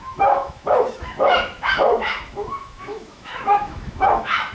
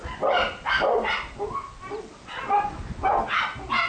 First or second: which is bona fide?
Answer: second